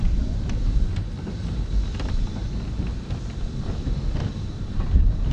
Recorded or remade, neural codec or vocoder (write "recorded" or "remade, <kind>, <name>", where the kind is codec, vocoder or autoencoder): recorded